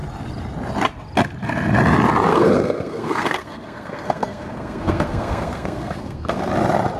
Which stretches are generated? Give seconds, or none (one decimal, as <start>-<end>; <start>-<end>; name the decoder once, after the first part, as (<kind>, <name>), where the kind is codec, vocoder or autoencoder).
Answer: 2.3-6.5 (codec, SNAC)